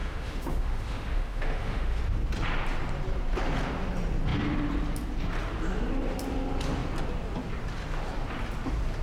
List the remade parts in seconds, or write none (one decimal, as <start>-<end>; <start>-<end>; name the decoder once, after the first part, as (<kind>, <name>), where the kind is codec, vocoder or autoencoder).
0.0-2.0 (autoencoder, DAC-VAE)